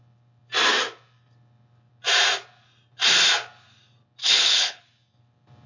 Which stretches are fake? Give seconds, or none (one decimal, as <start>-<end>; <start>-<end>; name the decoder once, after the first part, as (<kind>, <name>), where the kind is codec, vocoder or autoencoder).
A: 4.2-4.8 (codec, HILCodec)